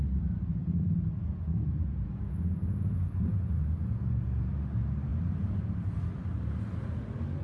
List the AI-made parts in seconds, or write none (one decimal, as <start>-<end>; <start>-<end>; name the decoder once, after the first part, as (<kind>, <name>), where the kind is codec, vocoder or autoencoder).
0.6-4.5 (vocoder, Vocos)